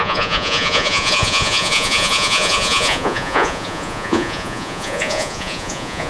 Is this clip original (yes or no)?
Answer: no